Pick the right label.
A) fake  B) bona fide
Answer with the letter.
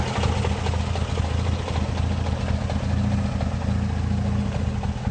B